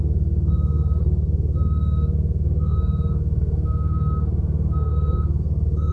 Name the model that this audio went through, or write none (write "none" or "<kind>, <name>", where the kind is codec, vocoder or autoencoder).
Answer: codec, SNAC